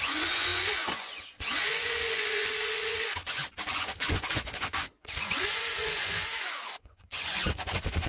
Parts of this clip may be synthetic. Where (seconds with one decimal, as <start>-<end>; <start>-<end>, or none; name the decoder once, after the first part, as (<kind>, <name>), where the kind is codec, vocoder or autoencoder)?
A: 0.0-8.1 (vocoder, Vocos)